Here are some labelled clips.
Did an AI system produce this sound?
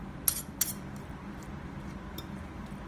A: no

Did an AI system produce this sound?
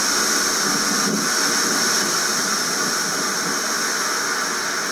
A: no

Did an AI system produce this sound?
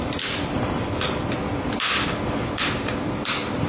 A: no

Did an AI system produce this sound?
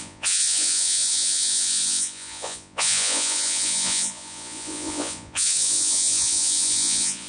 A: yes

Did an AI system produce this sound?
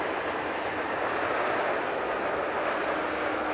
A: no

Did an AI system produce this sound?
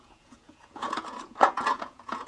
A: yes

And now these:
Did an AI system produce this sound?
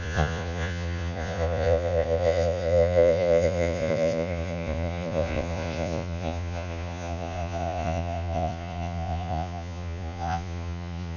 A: yes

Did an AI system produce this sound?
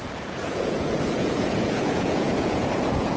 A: yes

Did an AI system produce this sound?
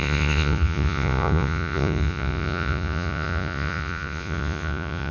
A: yes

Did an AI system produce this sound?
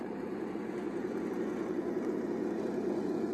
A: yes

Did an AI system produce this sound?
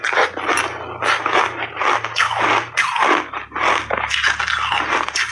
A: no